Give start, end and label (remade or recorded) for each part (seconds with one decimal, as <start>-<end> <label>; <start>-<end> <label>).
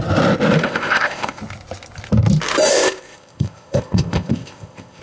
0.0-0.6 recorded; 0.6-1.4 remade; 1.4-2.7 recorded; 2.7-5.0 remade